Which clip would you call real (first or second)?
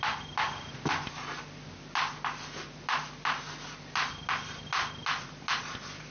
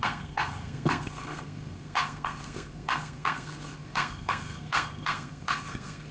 first